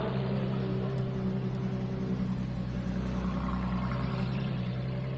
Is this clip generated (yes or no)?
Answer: no